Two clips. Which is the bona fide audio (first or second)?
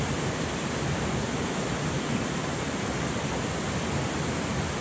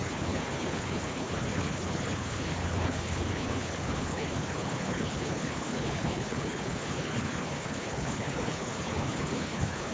first